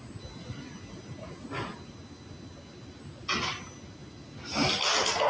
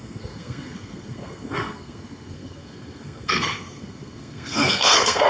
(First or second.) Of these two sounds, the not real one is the second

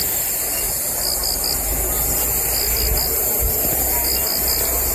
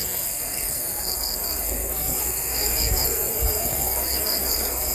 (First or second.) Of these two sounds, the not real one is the second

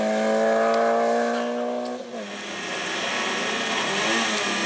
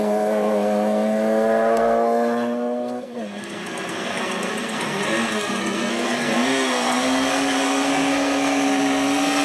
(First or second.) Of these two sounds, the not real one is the second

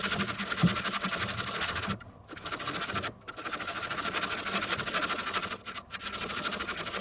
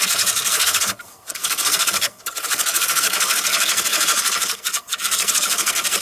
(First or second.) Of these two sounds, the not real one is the second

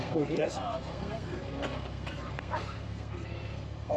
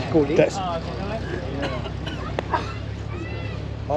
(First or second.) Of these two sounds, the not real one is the first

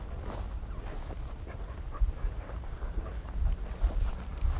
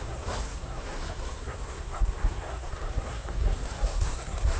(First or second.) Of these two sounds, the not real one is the second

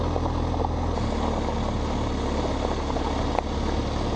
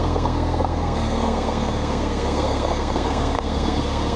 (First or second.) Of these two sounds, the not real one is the second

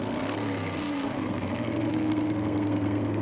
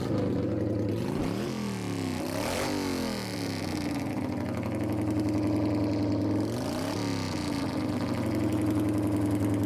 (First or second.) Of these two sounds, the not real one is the first